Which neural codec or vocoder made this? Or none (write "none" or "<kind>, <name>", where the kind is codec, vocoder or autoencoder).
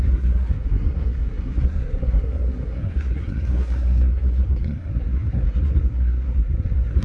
codec, SNAC